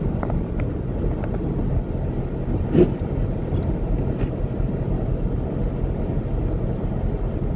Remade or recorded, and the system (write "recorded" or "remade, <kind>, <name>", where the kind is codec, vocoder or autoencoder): recorded